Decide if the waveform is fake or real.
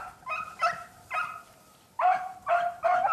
real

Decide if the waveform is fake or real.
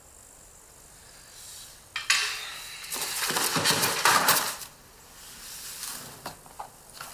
real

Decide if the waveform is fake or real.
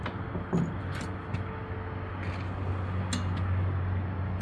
real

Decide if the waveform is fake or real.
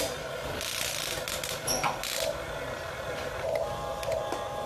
real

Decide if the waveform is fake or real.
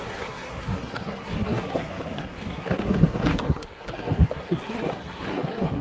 fake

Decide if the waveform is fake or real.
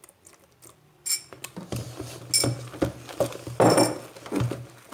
real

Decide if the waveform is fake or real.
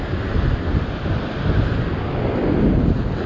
real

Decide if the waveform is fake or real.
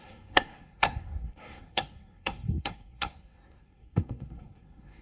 fake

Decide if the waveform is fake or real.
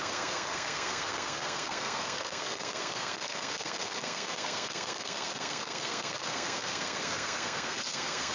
fake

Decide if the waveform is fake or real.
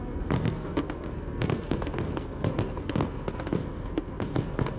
fake